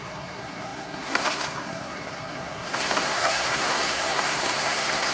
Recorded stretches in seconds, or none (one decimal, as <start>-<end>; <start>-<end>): none